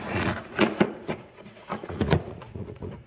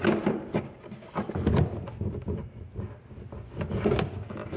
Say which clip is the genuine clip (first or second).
second